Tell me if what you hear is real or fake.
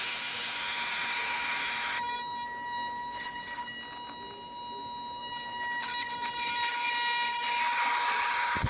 real